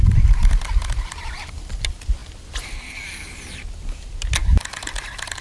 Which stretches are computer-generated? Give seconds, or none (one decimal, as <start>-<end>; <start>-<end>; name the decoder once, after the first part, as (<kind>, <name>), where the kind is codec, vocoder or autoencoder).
none

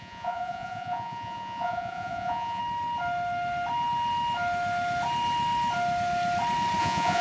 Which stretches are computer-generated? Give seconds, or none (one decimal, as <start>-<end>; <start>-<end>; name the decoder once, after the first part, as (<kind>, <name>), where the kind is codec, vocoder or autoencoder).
0.0-2.6 (vocoder, Vocos); 6.8-7.2